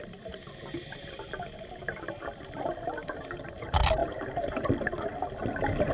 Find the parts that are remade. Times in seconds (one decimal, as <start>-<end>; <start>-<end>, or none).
4.0-4.7